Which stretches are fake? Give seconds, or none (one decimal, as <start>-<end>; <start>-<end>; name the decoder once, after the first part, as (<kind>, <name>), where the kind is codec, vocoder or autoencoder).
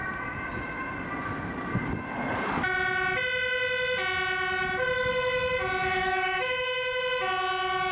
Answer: 5.8-7.0 (autoencoder, DAC-VAE)